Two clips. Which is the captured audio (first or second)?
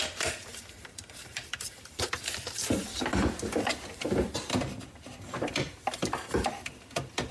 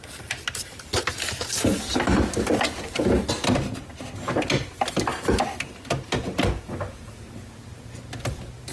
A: second